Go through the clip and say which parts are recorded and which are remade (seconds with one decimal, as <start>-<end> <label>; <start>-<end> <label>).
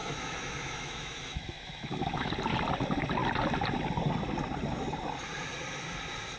0.0-2.3 remade; 2.3-6.4 recorded